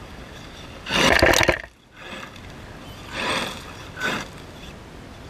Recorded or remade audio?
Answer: recorded